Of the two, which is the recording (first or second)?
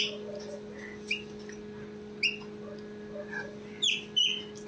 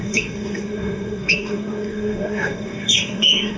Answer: first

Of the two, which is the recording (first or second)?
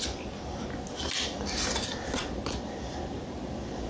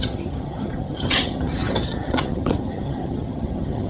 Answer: first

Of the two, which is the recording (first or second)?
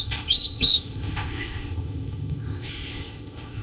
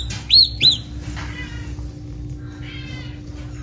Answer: second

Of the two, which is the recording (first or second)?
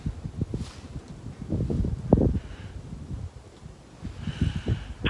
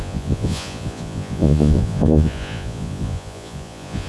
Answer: first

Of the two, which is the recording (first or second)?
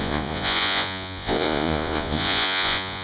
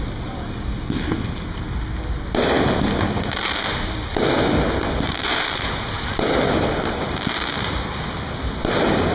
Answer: second